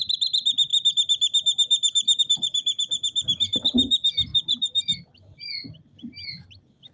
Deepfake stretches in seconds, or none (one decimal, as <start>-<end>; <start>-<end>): none